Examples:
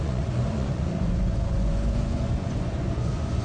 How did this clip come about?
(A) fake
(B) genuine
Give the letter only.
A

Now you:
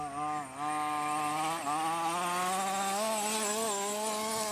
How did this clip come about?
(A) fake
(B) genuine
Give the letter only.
B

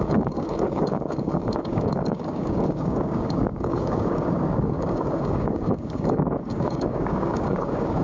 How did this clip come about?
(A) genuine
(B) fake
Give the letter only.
B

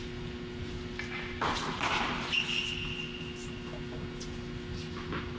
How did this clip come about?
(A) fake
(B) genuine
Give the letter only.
B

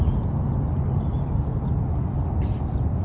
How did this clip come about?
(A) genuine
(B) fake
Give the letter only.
A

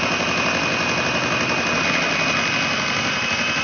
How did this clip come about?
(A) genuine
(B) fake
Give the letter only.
A